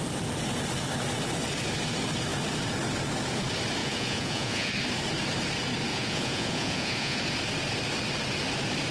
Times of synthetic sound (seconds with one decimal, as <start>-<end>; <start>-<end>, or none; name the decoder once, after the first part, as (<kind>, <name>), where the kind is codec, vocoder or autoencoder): 3.8-4.7 (vocoder, Vocos); 5.9-7.2